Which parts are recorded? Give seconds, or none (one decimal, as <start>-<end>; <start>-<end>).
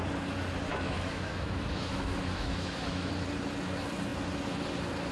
0.0-0.7; 3.1-5.1